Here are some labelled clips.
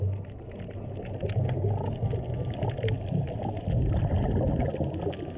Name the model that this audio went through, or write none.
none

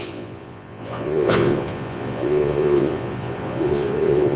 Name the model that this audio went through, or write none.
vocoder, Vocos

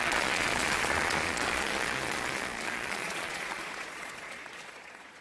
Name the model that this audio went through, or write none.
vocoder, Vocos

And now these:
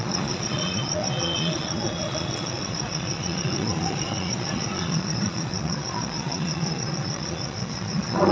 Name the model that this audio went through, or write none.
vocoder, Vocos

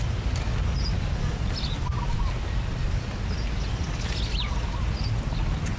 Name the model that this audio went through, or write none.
none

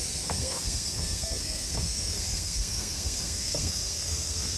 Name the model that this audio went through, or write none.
codec, SNAC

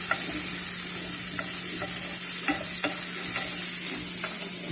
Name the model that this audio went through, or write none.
none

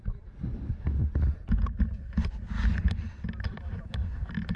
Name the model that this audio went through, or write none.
none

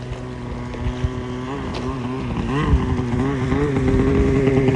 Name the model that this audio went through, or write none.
none